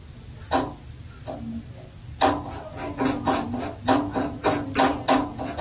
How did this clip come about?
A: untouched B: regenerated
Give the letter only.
A